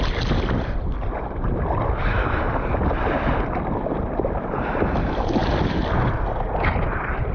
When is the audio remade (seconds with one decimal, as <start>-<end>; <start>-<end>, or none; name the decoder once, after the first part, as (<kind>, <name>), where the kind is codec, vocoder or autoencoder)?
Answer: none